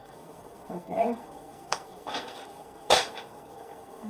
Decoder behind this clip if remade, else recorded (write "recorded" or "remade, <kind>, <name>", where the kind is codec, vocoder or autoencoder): remade, codec, SNAC